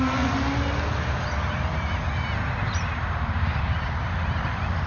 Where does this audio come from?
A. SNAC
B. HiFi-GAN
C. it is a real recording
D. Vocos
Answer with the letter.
C